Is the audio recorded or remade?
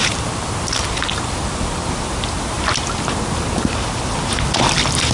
recorded